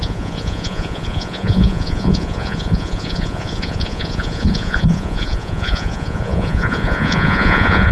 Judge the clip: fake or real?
fake